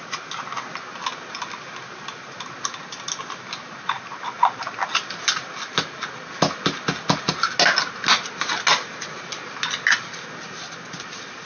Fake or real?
real